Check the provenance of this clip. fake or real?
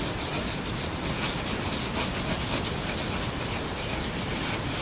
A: real